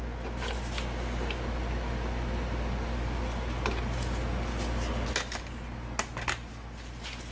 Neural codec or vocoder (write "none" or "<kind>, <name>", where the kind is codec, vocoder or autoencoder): none